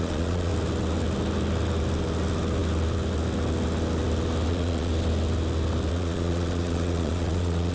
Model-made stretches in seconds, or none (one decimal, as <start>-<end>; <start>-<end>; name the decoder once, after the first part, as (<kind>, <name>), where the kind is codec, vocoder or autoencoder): 0.0-0.5 (vocoder, Vocos); 4.5-4.9; 5.9-7.7